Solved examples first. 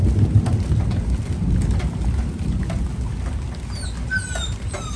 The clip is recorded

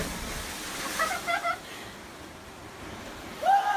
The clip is recorded